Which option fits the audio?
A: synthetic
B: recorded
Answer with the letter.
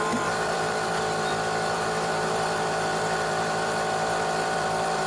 A